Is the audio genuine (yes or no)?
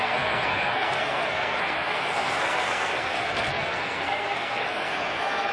no